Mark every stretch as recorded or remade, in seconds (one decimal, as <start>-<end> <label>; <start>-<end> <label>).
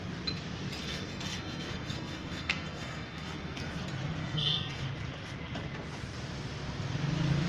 0.0-0.8 recorded; 0.8-3.7 remade; 3.7-4.2 recorded; 4.2-4.8 remade; 4.8-7.5 recorded